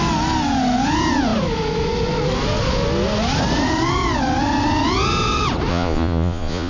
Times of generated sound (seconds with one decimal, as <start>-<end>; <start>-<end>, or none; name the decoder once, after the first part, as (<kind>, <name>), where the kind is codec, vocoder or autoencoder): 5.7-6.7 (vocoder, Vocos)